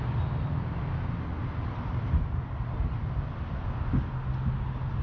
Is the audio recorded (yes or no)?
yes